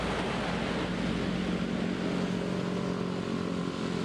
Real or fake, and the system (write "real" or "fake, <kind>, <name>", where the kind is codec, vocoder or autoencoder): real